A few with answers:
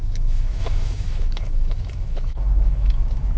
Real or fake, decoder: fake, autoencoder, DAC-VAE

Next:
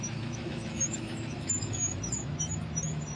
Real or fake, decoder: fake, autoencoder, DAC-VAE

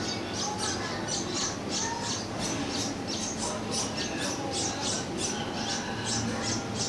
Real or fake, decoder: real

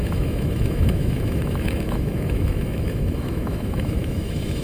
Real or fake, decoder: fake, autoencoder, DAC-VAE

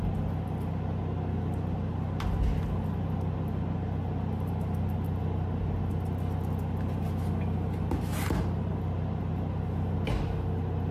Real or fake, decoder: real